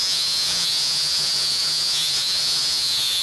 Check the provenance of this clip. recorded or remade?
remade